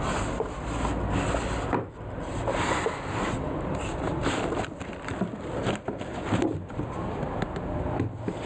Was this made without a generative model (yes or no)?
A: yes